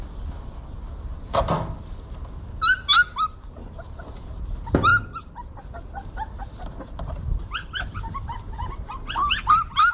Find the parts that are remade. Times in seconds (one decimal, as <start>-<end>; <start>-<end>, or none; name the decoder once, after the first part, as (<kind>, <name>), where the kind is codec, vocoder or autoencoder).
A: 6.0-8.6 (vocoder, BigVGAN v2)